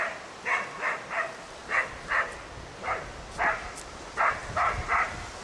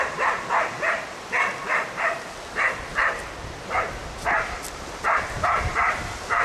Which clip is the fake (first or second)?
second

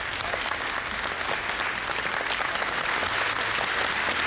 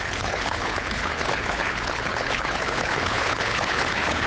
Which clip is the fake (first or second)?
second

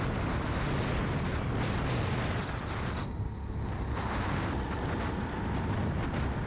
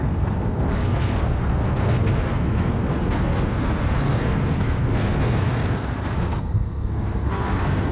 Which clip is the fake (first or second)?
second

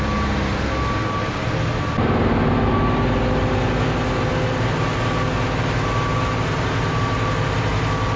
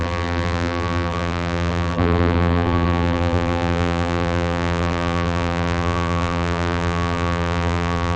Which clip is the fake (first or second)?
second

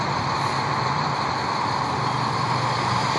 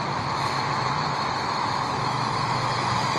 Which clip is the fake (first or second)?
second